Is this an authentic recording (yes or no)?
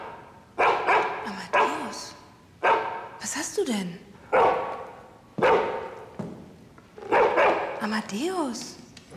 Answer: yes